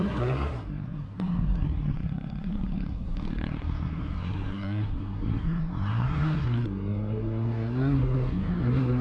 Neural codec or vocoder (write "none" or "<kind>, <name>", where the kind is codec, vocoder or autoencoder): codec, SNAC